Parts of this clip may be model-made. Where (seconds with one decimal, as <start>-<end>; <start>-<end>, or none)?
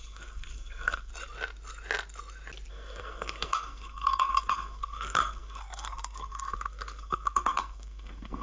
0.0-1.1; 2.7-8.4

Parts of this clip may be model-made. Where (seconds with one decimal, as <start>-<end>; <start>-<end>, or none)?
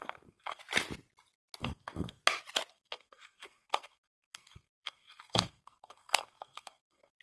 0.0-0.6; 1.6-2.2; 2.7-7.2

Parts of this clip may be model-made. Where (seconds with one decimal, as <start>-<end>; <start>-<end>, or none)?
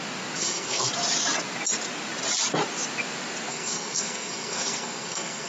0.4-0.9; 3.5-5.5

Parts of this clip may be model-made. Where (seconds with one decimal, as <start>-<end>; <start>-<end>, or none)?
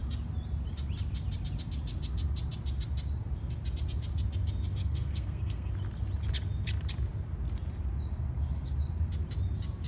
4.8-5.7